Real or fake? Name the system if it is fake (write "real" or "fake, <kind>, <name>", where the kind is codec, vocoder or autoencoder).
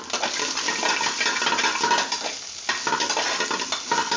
real